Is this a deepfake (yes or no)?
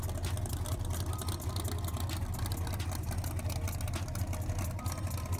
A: no